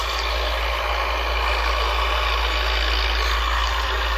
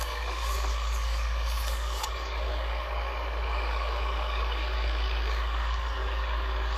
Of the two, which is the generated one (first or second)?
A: second